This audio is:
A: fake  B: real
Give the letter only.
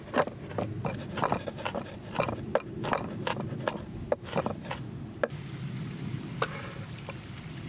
B